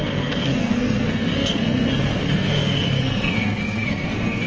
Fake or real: fake